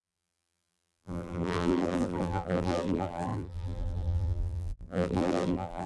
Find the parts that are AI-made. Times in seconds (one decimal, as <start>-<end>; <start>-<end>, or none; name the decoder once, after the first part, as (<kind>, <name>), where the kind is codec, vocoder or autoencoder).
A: 0.0-5.9 (vocoder, BigVGAN v2)